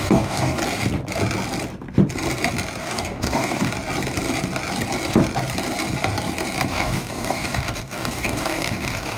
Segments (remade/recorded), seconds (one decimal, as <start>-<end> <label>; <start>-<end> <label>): 0.0-0.6 remade; 0.6-2.8 recorded; 2.8-3.7 remade; 3.7-6.7 recorded; 6.7-9.2 remade